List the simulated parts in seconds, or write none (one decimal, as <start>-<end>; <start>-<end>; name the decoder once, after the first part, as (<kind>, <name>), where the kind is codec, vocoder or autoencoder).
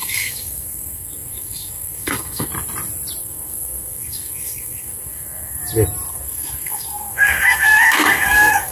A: 0.0-2.5 (codec, SNAC); 3.2-5.6; 6.1-8.7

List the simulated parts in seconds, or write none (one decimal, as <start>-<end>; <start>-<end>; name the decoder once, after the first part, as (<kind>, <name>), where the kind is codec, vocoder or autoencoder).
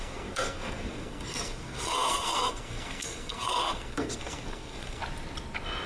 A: 0.0-5.0 (codec, SNAC)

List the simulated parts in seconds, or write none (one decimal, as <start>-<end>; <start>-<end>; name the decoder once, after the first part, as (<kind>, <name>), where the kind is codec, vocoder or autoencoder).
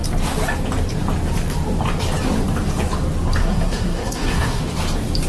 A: 3.4-4.6 (codec, SNAC)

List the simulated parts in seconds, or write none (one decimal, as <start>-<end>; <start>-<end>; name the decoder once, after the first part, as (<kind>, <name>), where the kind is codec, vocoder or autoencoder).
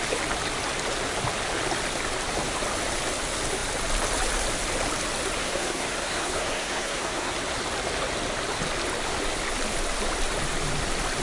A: 5.4-7.3 (codec, SNAC)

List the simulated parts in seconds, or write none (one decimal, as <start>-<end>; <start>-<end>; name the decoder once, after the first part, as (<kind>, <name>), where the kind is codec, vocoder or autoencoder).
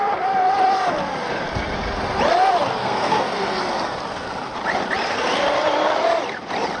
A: 2.8-3.6 (codec, SNAC)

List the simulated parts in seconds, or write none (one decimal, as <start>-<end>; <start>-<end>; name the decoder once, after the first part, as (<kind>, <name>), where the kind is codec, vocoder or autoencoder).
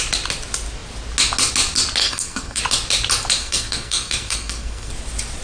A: 2.0-2.6 (codec, SNAC); 3.4-4.9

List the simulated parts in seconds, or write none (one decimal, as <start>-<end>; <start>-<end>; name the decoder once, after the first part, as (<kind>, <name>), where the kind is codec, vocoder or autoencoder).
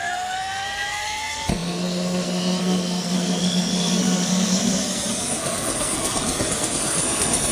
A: 0.0-7.5 (codec, SNAC)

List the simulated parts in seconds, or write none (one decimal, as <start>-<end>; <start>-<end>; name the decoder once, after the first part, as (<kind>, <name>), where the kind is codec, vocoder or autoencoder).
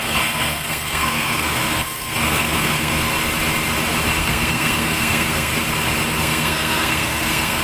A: 0.0-3.1 (codec, SNAC); 4.2-5.5; 6.2-7.6